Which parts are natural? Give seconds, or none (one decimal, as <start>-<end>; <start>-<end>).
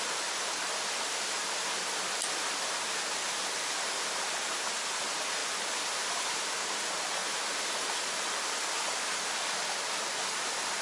0.0-10.8